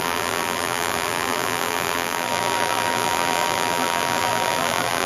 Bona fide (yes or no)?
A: no